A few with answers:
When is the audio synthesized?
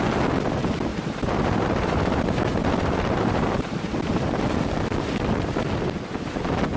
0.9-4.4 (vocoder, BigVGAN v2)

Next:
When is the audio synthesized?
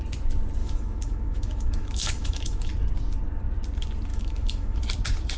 0.6-2.7 (autoencoder, DAC-VAE); 4.1-4.8